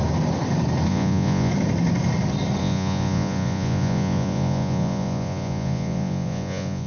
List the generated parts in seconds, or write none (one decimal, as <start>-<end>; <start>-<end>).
0.9-1.5; 2.6-6.9